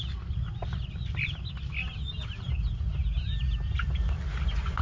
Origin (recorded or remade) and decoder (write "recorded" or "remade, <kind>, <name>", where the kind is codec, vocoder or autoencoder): recorded